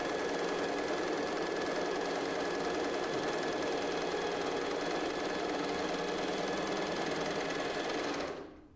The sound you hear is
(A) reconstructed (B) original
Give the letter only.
B